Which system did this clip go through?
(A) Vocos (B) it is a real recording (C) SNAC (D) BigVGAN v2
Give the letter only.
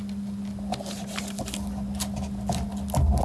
B